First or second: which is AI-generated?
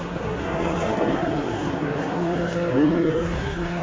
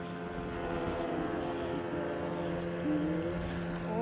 first